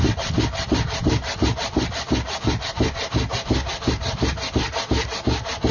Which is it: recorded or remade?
recorded